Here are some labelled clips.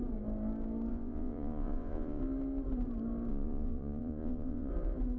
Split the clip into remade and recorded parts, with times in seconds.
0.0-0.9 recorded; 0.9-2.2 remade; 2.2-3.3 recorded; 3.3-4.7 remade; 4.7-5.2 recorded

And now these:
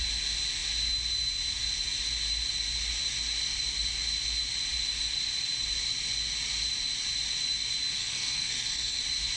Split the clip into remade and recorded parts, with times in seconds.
0.0-8.0 recorded; 8.0-9.0 remade; 9.0-9.4 recorded

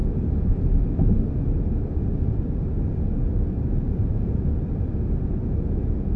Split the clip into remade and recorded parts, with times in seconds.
0.0-6.2 recorded

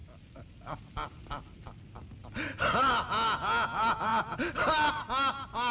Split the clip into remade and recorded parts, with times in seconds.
0.0-1.8 remade; 1.8-2.2 recorded; 2.2-2.9 remade; 2.9-4.1 recorded; 4.1-4.9 remade; 4.9-5.7 recorded

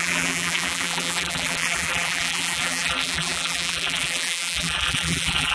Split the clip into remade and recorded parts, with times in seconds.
0.0-5.5 remade

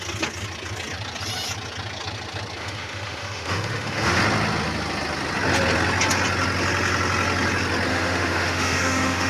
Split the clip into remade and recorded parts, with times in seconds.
0.0-2.6 recorded; 2.6-4.2 remade; 4.2-7.9 recorded; 7.9-9.3 remade